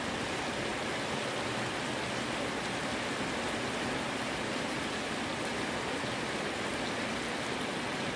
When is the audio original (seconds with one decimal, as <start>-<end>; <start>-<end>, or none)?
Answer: 0.0-8.2